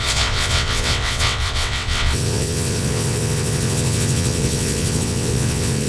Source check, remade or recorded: remade